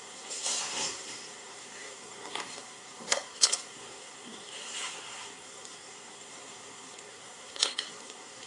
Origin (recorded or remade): remade